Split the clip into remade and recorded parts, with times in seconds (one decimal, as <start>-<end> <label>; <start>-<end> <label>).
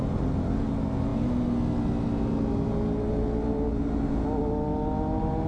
0.0-5.5 recorded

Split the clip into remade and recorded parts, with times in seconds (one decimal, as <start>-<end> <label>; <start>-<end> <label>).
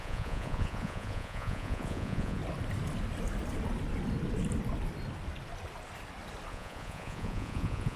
0.0-2.4 remade; 2.4-6.5 recorded; 6.5-8.0 remade